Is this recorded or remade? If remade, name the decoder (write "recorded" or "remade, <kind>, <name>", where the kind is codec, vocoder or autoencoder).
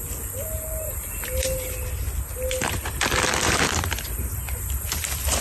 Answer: recorded